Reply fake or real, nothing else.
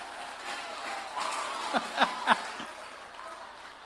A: real